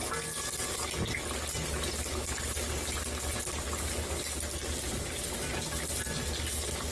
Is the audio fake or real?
real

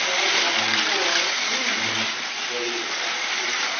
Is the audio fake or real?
real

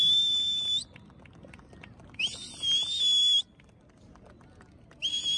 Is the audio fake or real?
real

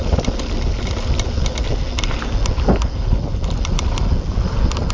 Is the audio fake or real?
real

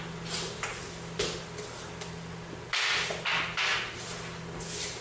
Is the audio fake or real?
real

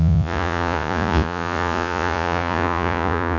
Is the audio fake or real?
fake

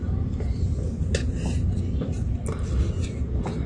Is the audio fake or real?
real